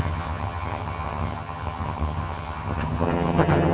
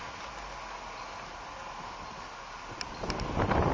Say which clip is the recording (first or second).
second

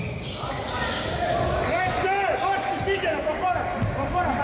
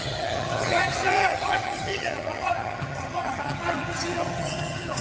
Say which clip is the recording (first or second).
first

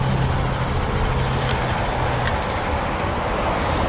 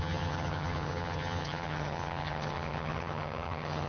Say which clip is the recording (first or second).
first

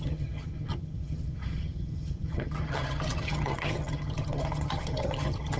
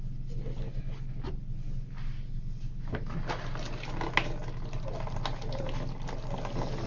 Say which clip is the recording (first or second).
second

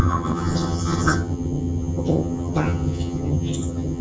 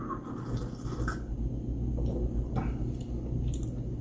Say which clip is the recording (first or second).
second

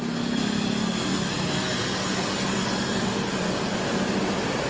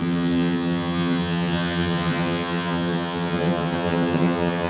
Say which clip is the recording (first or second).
first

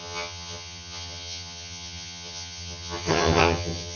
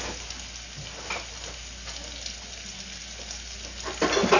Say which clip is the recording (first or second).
second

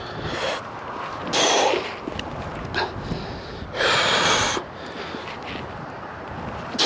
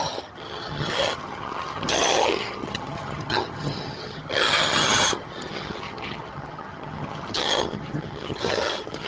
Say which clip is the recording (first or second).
first